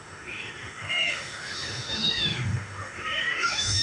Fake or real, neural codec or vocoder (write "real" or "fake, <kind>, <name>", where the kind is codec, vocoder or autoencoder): fake, autoencoder, DAC-VAE